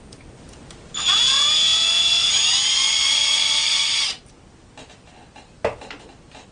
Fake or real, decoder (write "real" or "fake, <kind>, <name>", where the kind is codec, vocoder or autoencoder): real